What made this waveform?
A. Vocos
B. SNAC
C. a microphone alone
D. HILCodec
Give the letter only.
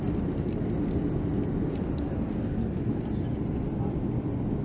C